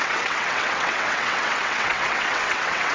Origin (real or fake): fake